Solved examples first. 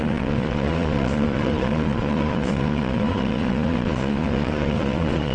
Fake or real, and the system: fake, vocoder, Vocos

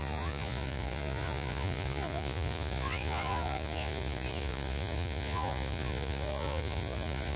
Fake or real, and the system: fake, vocoder, Vocos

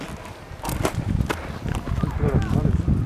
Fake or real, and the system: real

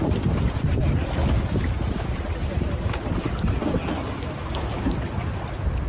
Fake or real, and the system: real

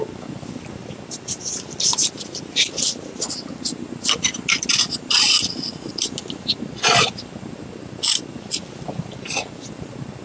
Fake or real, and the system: real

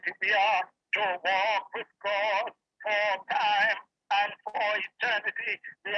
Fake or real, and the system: real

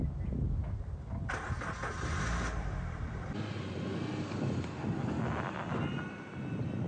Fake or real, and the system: real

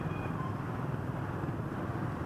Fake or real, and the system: real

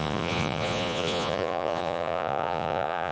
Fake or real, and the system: fake, vocoder, Vocos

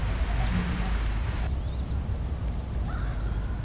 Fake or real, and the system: real